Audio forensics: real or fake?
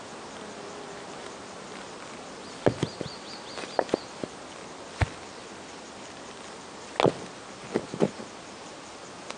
real